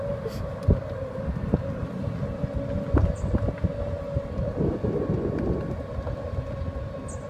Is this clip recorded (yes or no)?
yes